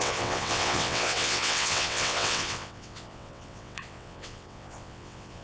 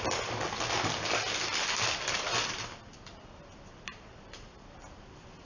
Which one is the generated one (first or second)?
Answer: first